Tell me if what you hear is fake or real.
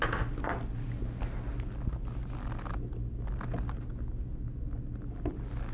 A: real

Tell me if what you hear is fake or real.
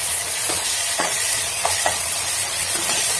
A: fake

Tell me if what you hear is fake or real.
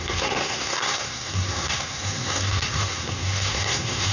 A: fake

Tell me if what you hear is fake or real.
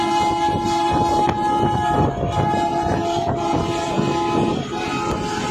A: real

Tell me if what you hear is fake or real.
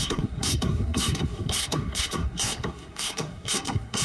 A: fake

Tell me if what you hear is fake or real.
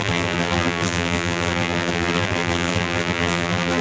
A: fake